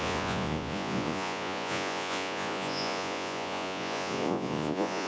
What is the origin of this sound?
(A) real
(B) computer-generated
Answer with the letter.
B